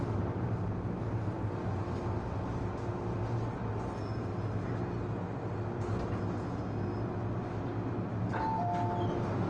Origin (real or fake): real